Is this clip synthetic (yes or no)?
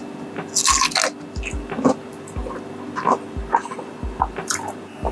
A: no